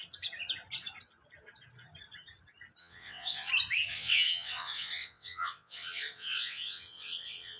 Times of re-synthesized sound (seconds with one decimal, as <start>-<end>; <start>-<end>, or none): 2.8-3.5; 3.9-7.6